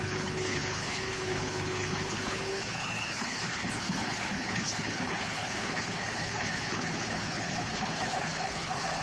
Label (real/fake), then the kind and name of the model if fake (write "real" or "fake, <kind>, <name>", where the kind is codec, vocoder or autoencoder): fake, codec, HILCodec